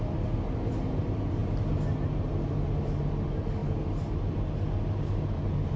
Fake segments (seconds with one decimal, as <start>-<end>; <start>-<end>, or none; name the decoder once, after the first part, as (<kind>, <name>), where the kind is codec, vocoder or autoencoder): none